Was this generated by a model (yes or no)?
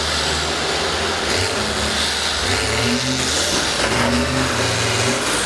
no